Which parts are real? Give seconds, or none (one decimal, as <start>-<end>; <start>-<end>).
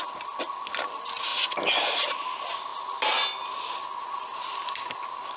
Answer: 0.0-5.4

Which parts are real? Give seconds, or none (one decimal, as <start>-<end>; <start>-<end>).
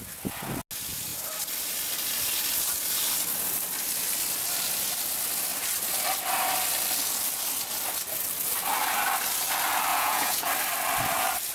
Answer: 0.0-9.9; 10.5-11.5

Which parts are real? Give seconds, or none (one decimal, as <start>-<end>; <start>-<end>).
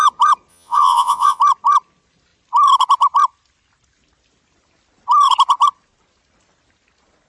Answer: 0.0-0.5; 1.4-7.3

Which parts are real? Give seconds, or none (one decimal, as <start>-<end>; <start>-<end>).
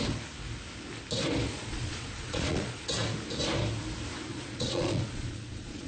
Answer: 0.0-1.5; 2.9-4.3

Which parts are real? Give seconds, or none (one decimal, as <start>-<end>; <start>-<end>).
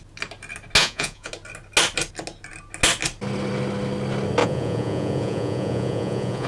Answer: 0.0-0.8; 1.3-4.4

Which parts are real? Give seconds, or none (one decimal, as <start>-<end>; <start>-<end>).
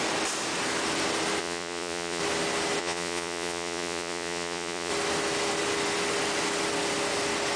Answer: 0.0-1.4; 2.2-2.8; 4.9-7.6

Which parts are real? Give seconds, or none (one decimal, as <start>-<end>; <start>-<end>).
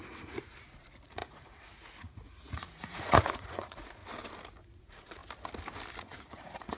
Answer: 4.0-4.8; 5.2-6.0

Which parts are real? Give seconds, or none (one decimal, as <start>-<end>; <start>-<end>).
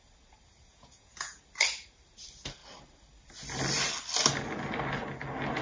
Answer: 0.0-0.7; 1.4-5.6